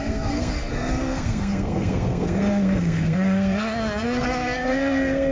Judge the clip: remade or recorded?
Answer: remade